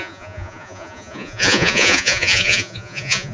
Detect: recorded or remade remade